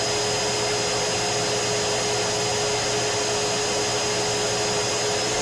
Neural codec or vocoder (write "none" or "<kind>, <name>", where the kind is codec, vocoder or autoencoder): none